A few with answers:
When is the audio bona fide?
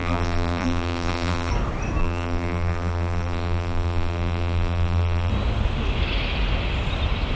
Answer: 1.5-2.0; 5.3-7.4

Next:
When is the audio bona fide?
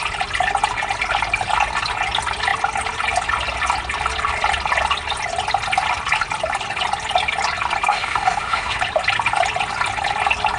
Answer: 0.0-7.9; 8.8-10.6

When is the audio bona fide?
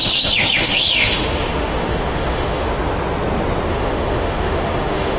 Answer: 2.7-3.7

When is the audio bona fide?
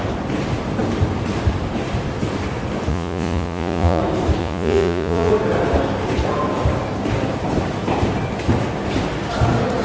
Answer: 0.0-2.9; 4.0-4.4; 5.3-9.8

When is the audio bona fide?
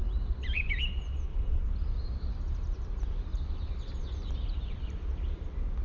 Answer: 0.7-1.3; 3.7-4.2; 4.8-5.8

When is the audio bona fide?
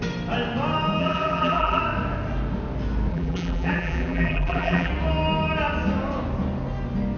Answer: 0.0-1.0; 1.8-3.1; 4.9-7.2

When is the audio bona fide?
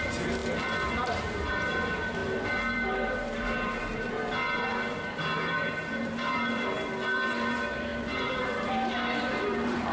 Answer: none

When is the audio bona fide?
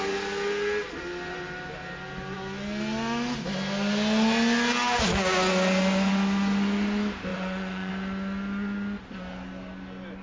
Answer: 0.0-7.3; 7.9-10.2